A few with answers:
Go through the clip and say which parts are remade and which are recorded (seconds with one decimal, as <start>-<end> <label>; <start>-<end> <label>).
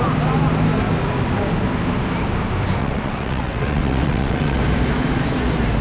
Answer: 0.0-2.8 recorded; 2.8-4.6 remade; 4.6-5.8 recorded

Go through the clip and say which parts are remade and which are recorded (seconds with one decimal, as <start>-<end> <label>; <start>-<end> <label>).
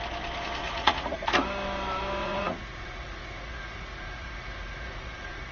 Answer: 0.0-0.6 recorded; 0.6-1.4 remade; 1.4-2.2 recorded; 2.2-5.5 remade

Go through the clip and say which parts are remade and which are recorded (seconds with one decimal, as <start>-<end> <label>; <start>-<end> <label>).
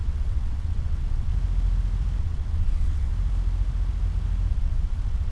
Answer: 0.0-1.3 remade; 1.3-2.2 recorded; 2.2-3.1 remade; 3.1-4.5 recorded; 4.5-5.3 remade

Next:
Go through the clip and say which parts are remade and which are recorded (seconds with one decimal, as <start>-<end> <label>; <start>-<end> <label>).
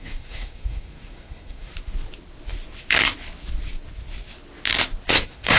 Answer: 0.0-1.7 remade; 1.7-5.1 recorded; 5.1-5.6 remade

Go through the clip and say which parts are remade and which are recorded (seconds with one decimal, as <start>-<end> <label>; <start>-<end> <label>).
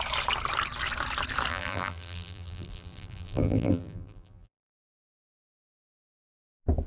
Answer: 0.0-1.5 recorded; 1.5-5.4 remade; 5.4-6.9 recorded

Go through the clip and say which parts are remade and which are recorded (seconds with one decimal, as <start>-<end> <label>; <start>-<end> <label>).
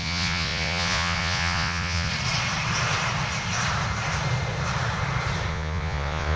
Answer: 0.0-2.1 remade; 2.1-5.5 recorded; 5.5-6.4 remade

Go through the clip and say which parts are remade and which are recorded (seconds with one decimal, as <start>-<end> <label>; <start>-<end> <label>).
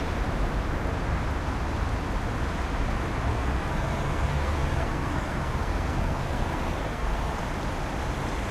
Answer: 0.0-3.3 recorded; 3.3-7.4 remade; 7.4-8.5 recorded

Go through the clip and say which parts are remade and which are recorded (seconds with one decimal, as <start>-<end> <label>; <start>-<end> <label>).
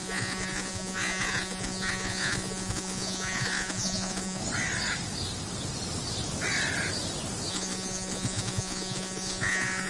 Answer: 0.0-4.4 remade; 4.4-7.5 recorded; 7.5-9.9 remade